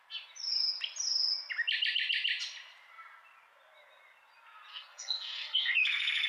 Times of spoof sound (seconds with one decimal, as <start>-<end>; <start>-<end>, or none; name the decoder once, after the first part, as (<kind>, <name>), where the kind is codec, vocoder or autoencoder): 4.7-6.3 (codec, SNAC)